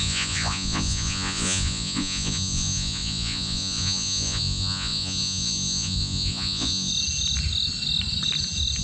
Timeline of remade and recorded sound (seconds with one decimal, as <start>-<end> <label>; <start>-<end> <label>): 0.0-6.9 remade; 6.9-8.8 recorded